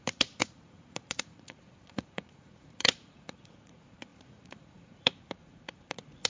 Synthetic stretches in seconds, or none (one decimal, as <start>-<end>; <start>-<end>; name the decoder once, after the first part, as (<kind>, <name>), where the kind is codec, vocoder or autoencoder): 0.0-6.3 (vocoder, Vocos)